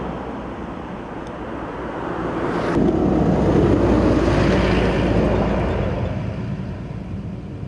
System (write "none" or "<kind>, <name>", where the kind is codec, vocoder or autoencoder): none